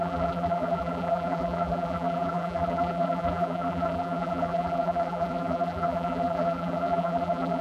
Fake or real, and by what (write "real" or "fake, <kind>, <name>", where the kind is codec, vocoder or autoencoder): fake, vocoder, BigVGAN v2